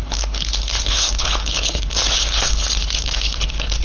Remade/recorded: remade